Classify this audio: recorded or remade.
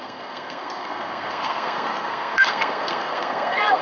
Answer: remade